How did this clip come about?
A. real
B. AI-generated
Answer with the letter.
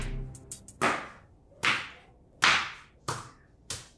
A